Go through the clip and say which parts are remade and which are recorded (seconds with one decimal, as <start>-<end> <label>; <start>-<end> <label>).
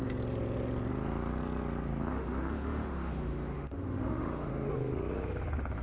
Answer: 0.0-2.1 recorded; 2.1-4.7 remade; 4.7-5.8 recorded